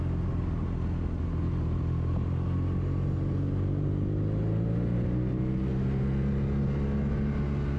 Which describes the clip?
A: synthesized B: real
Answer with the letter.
B